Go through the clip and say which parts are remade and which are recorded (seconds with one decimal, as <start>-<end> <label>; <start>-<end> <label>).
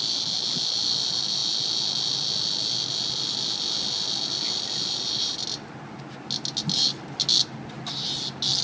0.0-8.6 recorded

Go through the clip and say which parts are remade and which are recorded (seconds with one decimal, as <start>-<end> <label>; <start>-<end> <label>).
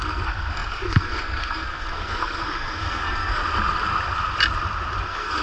0.0-3.4 remade; 3.4-5.0 recorded; 5.0-5.4 remade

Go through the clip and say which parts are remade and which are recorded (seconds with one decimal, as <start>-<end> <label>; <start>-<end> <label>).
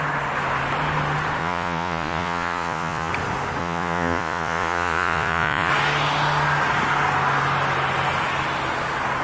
0.0-1.4 recorded; 1.4-3.1 remade; 3.1-3.6 recorded; 3.6-5.7 remade; 5.7-9.2 recorded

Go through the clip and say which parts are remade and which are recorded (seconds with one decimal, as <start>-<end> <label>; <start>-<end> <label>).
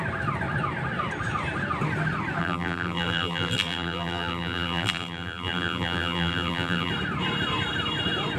0.0-2.4 recorded; 2.4-6.9 remade; 6.9-8.4 recorded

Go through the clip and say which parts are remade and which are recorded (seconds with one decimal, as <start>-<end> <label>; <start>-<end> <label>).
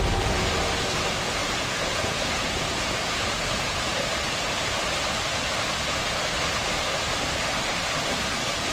0.0-1.4 recorded; 1.4-4.0 remade; 4.0-8.7 recorded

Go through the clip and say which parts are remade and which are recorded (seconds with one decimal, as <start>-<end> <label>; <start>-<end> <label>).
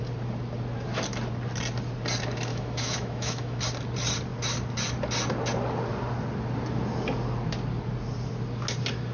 0.0-2.5 recorded; 2.5-3.6 remade; 3.6-9.1 recorded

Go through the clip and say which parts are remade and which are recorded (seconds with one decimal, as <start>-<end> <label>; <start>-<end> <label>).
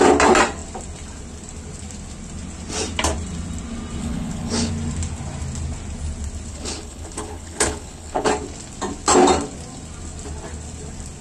0.0-4.0 recorded; 4.0-4.7 remade; 4.7-6.5 recorded; 6.5-8.3 remade; 8.3-11.2 recorded